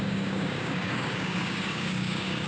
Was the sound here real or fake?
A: fake